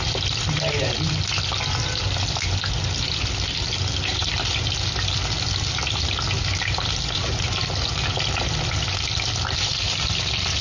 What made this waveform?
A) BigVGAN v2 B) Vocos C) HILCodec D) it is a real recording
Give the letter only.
D